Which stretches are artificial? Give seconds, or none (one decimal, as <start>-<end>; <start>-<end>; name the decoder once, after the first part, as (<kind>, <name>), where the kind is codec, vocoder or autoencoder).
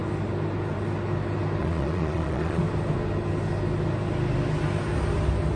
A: 1.6-2.6 (vocoder, Vocos)